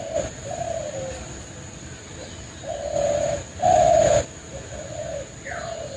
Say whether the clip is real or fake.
real